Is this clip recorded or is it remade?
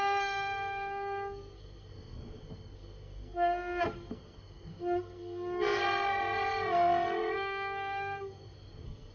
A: remade